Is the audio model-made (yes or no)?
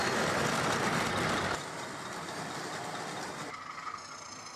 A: no